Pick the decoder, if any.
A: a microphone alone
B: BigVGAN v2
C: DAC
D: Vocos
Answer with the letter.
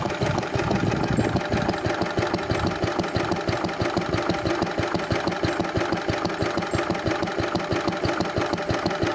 A